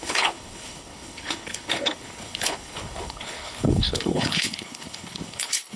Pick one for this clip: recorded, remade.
remade